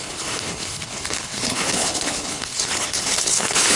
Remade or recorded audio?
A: remade